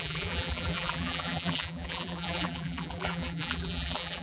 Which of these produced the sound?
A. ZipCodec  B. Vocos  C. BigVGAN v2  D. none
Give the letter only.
C